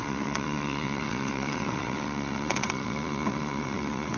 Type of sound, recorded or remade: remade